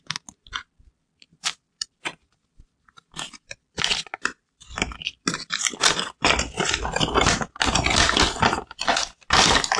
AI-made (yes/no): no